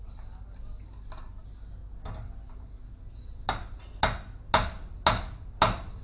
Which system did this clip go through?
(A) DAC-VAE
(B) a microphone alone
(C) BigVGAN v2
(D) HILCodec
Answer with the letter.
B